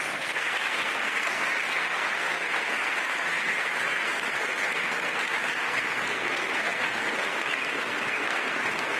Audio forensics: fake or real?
fake